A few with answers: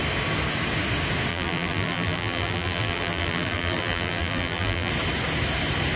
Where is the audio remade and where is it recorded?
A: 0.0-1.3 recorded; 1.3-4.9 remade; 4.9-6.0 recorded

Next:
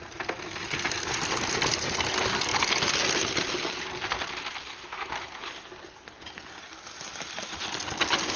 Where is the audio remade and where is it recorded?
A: 0.0-8.4 recorded

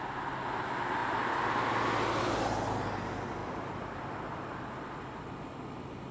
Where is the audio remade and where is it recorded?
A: 0.0-3.4 recorded; 3.4-5.2 remade; 5.2-6.1 recorded

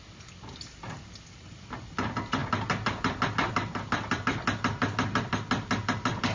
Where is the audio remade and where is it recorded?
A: 0.0-6.3 recorded

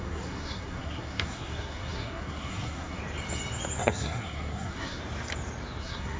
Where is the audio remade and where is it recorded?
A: 0.0-3.0 remade; 3.0-3.8 recorded; 3.8-5.0 remade; 5.0-5.8 recorded; 5.8-6.2 remade